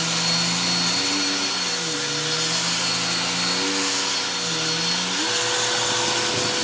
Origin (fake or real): real